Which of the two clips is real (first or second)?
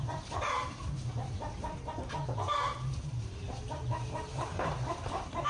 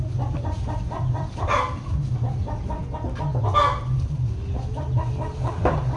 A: second